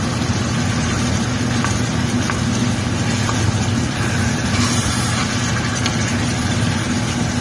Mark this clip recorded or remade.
recorded